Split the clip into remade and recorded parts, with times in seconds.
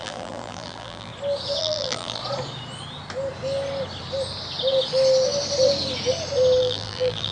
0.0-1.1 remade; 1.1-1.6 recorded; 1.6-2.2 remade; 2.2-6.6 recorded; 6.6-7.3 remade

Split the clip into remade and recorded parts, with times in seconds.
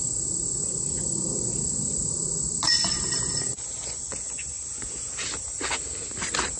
0.0-3.5 recorded; 3.5-5.1 remade; 5.1-6.6 recorded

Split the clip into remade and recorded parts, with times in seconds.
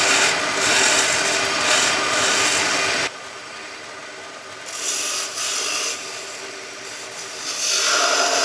0.0-8.4 recorded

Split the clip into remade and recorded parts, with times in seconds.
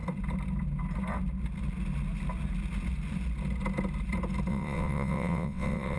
0.0-4.5 recorded; 4.5-6.0 remade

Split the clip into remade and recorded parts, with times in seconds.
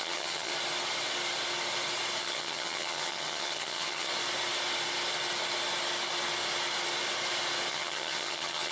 0.0-0.5 remade; 0.5-2.2 recorded; 2.2-4.1 remade; 4.1-7.7 recorded; 7.7-8.7 remade